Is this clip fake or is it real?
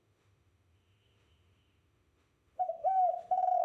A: fake